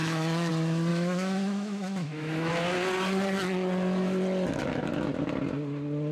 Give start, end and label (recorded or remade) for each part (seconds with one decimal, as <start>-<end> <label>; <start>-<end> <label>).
0.0-0.5 remade; 0.5-0.9 recorded; 0.9-2.5 remade; 2.5-6.1 recorded